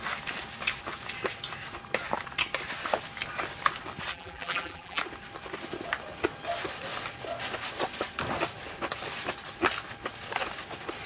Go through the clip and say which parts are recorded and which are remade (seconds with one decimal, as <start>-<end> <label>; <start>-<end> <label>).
0.0-4.1 recorded; 4.1-5.0 remade; 5.0-11.1 recorded